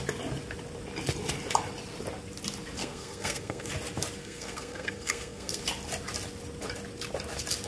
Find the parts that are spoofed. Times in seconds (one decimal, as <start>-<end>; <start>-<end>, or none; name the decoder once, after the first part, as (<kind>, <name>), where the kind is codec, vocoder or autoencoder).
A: 2.8-3.7 (codec, SNAC); 4.2-5.6